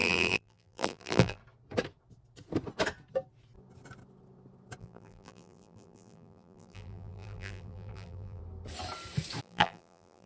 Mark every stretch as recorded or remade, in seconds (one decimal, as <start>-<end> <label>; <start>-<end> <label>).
0.0-1.4 remade; 1.4-4.8 recorded; 4.8-8.4 remade; 8.4-9.4 recorded; 9.4-10.3 remade